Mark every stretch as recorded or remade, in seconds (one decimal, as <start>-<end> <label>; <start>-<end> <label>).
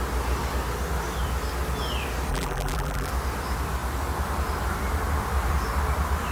0.0-2.3 recorded; 2.3-3.1 remade; 3.1-6.3 recorded